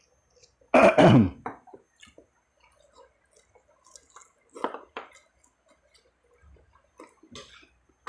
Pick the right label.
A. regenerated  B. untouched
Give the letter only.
B